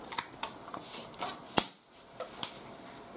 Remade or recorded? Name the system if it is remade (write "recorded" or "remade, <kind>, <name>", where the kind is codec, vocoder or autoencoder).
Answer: remade, vocoder, BigVGAN v2